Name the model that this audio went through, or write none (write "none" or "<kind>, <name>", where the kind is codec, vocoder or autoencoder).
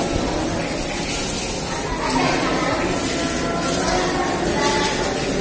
none